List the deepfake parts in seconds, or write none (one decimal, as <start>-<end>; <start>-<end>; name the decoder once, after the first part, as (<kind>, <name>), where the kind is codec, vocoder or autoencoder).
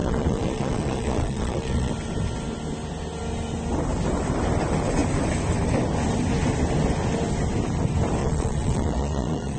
0.0-1.9 (vocoder, Vocos); 8.2-9.6